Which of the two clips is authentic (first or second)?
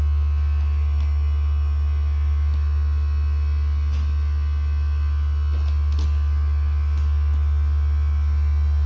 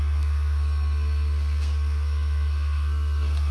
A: first